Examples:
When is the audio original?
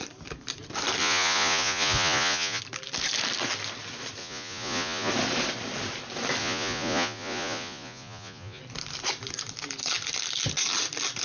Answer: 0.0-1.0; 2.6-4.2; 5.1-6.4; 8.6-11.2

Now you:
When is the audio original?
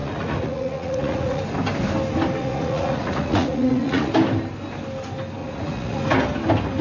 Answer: 1.4-2.4; 4.1-5.4; 6.0-6.8